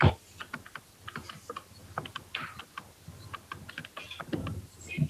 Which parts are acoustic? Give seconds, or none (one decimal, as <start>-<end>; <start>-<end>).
0.0-1.8; 2.6-5.1